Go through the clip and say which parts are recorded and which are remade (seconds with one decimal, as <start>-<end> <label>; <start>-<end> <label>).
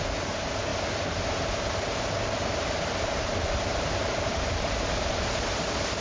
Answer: 0.0-6.0 recorded